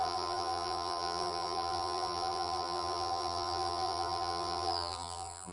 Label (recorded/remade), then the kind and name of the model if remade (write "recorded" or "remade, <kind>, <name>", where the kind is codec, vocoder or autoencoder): remade, vocoder, BigVGAN v2